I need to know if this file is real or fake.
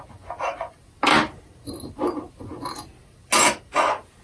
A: real